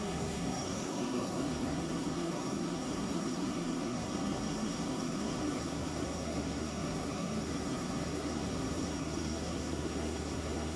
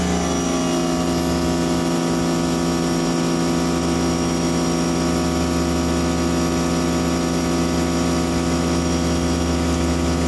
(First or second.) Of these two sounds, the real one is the second